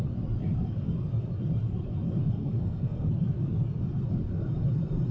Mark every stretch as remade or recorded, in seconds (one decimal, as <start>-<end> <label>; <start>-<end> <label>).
0.0-2.4 recorded; 2.4-3.1 remade; 3.1-5.1 recorded